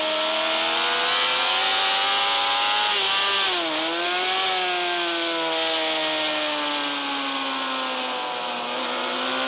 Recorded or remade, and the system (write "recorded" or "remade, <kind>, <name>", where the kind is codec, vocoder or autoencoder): recorded